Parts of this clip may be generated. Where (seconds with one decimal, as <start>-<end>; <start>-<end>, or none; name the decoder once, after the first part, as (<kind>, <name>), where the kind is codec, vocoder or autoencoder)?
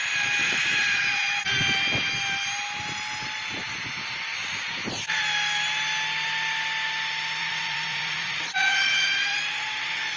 0.4-1.6 (vocoder, Vocos); 4.4-5.2; 7.4-10.2